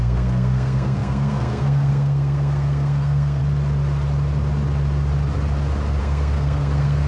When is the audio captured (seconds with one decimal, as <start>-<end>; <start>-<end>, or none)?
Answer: 3.4-6.0